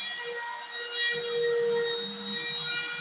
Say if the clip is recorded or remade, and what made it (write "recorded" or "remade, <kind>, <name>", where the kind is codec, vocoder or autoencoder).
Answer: recorded